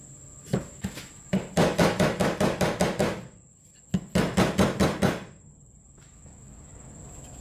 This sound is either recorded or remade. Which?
recorded